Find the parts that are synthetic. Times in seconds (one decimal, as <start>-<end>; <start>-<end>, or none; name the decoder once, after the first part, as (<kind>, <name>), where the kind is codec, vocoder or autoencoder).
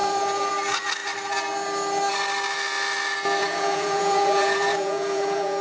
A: 0.0-0.5 (vocoder, Vocos); 3.4-5.6